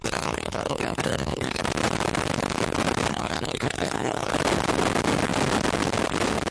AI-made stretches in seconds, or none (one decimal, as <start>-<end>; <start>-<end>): 0.0-1.6; 3.1-4.3